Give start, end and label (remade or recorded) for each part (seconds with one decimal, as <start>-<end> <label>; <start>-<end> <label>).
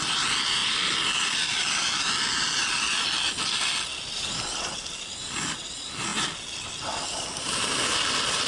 0.0-8.5 recorded